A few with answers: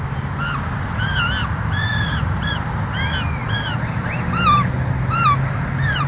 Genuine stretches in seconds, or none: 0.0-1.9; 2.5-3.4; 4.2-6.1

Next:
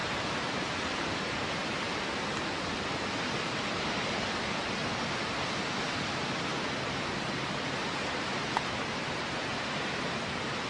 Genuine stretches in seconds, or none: 1.6-3.7; 4.8-8.0

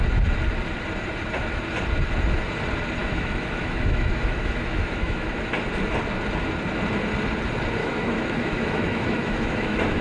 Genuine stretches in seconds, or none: 0.0-3.0; 5.5-7.8

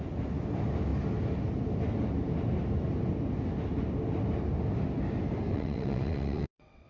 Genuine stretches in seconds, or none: 0.0-5.5

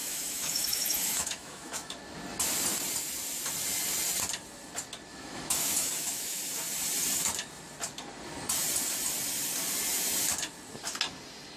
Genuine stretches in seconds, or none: 2.0-5.1; 6.4-11.6

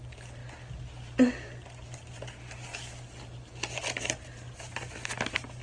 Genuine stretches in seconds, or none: 0.0-5.6

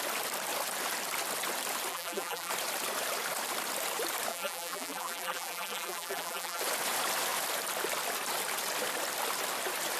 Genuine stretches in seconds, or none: 0.0-1.9; 2.5-4.3; 6.6-10.0